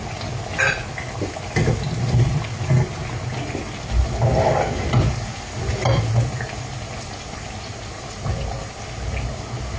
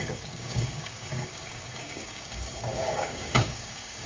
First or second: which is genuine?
first